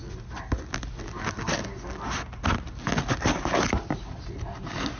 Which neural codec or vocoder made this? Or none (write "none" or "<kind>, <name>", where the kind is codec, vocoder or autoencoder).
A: none